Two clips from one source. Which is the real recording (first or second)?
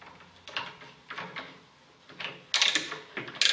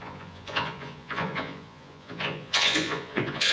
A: first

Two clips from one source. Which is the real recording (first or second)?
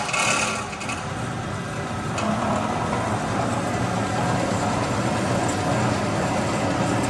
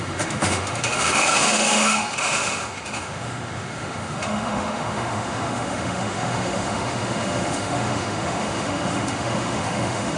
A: first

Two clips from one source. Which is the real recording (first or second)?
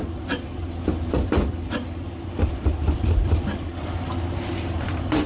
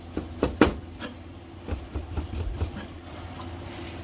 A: second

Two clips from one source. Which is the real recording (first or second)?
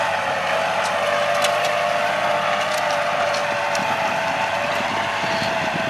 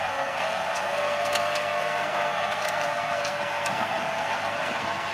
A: first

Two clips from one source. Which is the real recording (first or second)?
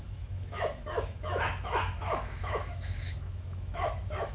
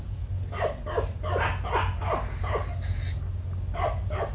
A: second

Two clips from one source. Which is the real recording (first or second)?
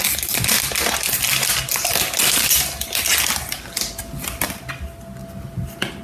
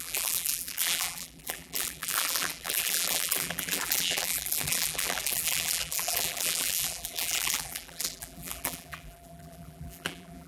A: first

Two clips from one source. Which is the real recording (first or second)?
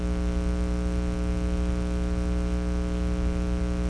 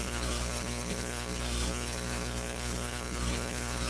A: first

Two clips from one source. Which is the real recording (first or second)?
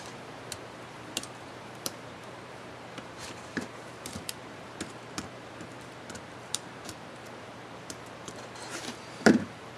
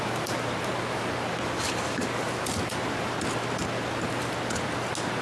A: second